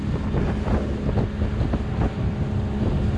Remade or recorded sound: recorded